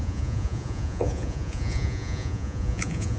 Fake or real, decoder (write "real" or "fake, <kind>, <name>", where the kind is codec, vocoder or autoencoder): fake, vocoder, Vocos